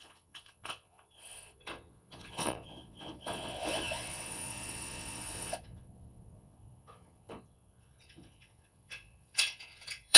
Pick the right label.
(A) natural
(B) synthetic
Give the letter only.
B